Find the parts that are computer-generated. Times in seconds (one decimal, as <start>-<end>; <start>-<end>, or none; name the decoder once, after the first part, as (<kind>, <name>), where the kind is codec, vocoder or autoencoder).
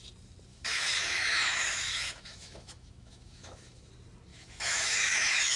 0.5-3.9 (autoencoder, DAC-VAE); 4.3-5.6